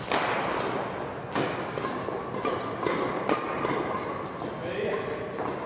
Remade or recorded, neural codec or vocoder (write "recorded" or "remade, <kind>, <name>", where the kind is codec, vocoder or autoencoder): recorded